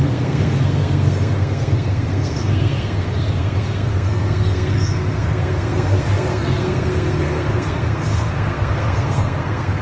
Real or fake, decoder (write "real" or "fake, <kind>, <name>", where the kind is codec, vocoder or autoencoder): fake, codec, SNAC